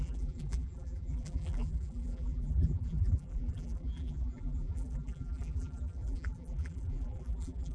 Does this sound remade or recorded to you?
remade